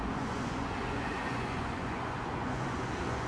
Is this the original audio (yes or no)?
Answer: no